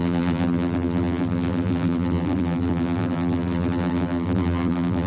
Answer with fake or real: fake